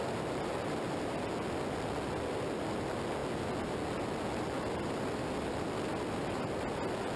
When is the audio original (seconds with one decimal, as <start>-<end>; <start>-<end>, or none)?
0.0-7.2